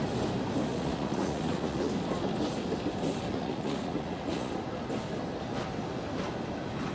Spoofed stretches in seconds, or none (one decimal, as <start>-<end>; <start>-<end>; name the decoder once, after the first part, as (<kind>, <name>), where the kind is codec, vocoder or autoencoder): 0.7-1.9 (vocoder, Vocos); 3.3-4.5